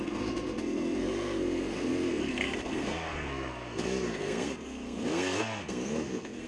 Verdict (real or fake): fake